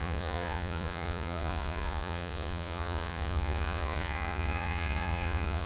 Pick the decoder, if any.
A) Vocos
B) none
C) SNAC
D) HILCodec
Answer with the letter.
A